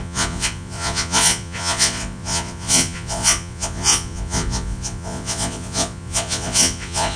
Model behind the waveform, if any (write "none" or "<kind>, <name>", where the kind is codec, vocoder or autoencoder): vocoder, Vocos